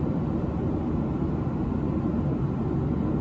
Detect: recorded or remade recorded